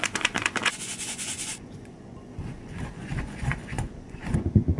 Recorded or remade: remade